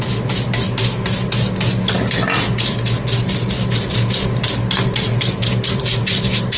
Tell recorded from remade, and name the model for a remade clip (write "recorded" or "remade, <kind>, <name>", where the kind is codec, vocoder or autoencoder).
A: recorded